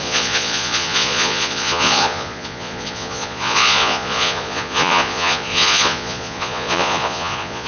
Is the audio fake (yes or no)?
yes